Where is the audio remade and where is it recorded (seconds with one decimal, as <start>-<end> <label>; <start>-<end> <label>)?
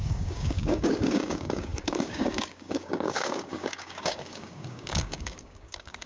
0.0-6.1 remade